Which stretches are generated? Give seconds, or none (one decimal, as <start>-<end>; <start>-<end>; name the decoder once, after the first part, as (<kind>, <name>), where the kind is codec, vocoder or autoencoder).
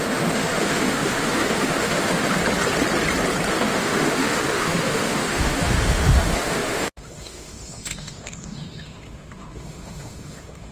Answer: 0.0-2.4 (autoencoder, DAC-VAE); 3.5-10.7